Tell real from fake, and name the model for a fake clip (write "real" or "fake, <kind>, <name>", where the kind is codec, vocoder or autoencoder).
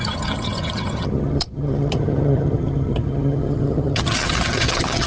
fake, vocoder, HiFi-GAN